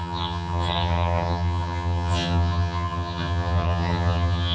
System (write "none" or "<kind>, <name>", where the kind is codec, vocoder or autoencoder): vocoder, HiFi-GAN